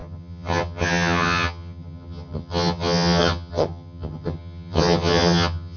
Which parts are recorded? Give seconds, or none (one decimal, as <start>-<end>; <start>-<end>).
none